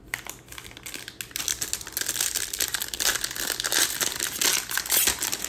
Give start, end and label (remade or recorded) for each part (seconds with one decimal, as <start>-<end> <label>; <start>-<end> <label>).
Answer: 0.0-5.5 recorded